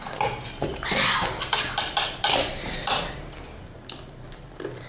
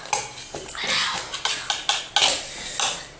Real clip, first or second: second